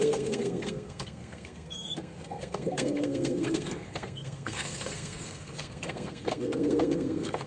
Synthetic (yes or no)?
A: yes